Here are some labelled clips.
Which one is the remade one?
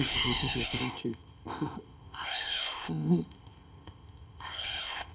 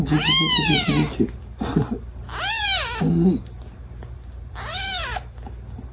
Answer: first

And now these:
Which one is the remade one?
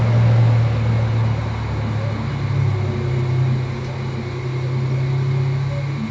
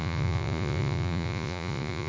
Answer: second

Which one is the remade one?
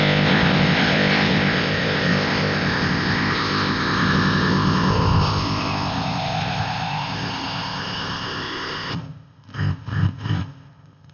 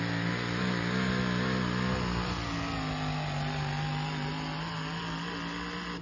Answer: first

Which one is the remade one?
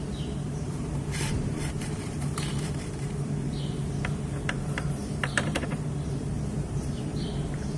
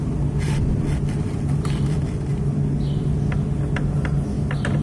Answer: first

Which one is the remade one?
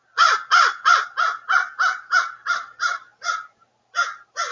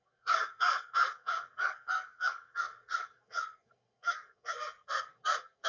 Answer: second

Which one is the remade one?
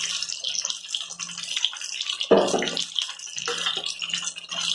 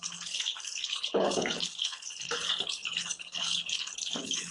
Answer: second